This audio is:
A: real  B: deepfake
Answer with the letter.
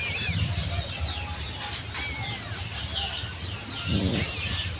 A